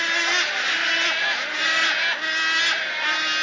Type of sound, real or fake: real